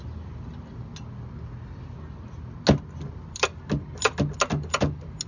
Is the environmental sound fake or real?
real